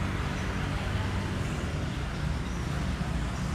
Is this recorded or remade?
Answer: recorded